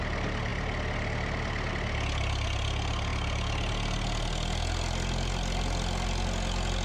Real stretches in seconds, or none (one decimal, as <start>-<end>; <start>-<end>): 0.0-6.8